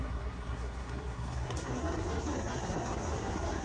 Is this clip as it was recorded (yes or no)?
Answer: no